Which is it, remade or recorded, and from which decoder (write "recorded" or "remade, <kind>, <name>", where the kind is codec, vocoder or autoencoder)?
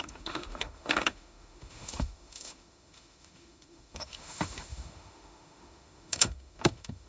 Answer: remade, autoencoder, DAC-VAE